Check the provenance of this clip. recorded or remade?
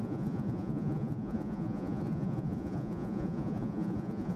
remade